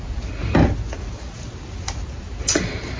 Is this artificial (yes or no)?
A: no